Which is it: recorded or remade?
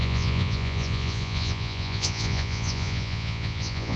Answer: remade